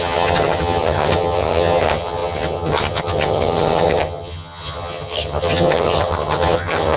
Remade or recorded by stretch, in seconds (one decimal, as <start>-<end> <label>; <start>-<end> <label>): 0.0-7.0 remade